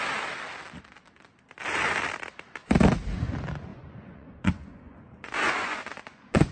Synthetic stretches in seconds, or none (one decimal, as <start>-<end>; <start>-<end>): 3.7-6.5